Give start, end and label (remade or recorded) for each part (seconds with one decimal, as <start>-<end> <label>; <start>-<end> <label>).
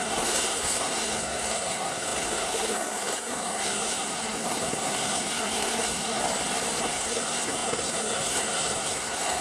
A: 0.0-6.2 remade; 6.2-6.8 recorded; 6.8-9.4 remade